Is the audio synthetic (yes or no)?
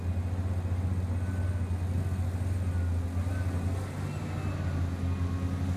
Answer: no